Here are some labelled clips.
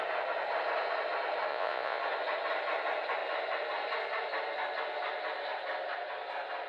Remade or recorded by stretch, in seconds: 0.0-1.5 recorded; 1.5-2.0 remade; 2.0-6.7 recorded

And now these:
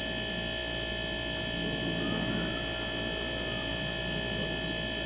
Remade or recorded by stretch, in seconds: 0.0-5.1 recorded

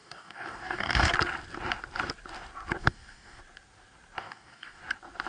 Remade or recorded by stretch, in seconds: 0.0-1.1 remade; 1.1-2.8 recorded; 2.8-3.4 remade; 3.4-4.2 recorded; 4.2-4.8 remade; 4.8-5.3 recorded